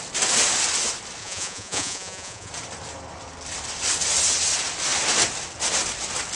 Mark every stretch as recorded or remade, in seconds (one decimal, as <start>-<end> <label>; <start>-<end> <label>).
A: 0.0-1.2 recorded; 1.2-2.5 remade; 2.5-6.3 recorded